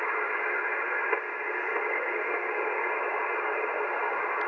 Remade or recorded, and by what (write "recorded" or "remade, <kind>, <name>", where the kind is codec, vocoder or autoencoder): recorded